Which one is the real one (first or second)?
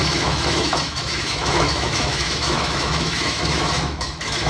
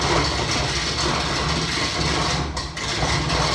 second